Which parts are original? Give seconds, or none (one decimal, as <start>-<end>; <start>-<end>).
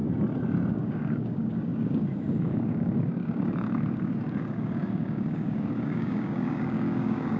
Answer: 0.0-0.7